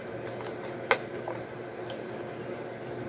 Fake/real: real